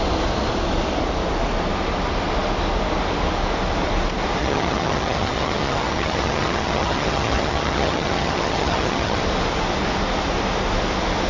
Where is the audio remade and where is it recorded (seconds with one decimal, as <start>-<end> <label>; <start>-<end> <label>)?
0.0-4.4 recorded; 4.4-9.2 remade; 9.2-11.3 recorded